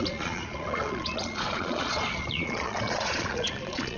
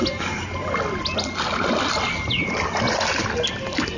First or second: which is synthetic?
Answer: first